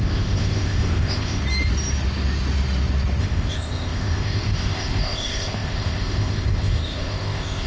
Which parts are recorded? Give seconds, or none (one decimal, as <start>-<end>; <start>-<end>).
1.4-3.2